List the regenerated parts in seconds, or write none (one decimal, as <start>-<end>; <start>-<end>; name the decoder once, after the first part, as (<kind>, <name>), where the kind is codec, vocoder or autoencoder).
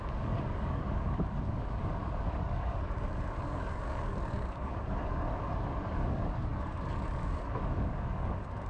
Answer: 0.0-8.7 (codec, DAC)